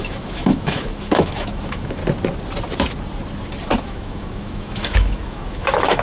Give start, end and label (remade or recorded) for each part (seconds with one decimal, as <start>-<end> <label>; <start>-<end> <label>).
0.0-2.0 remade; 2.0-3.8 recorded; 3.8-6.0 remade